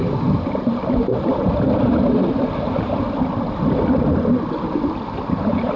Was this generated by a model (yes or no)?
no